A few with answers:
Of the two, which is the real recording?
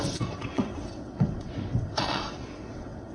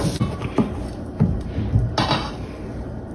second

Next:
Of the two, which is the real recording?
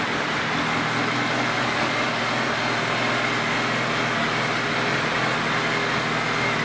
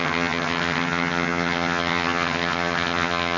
first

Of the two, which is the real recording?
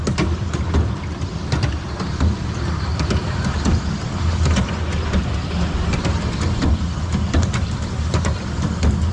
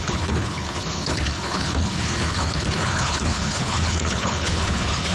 first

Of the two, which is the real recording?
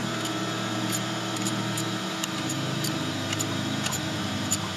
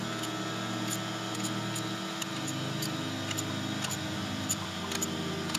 second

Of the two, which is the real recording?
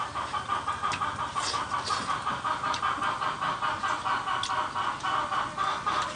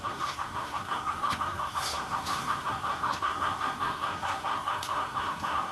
first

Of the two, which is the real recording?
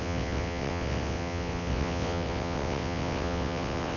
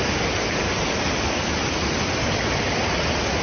second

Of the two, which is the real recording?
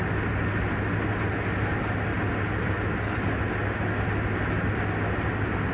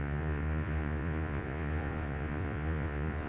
first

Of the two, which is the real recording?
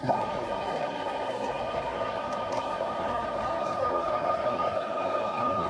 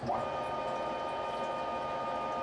second